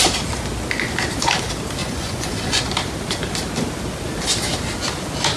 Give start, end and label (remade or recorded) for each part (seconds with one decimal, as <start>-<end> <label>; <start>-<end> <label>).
0.0-1.8 recorded; 1.8-2.6 remade; 2.6-5.4 recorded